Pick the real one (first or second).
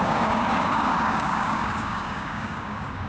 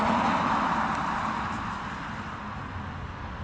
second